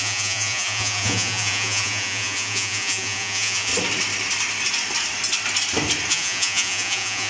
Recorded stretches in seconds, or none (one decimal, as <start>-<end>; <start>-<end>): 3.7-6.1